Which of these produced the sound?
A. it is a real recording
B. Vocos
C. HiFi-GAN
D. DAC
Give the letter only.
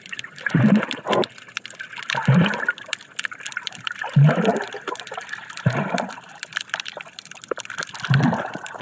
A